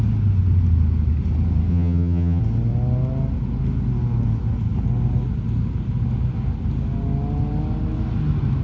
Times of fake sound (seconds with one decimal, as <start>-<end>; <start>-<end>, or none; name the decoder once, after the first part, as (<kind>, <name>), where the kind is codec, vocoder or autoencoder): 1.7-2.4 (vocoder, HiFi-GAN)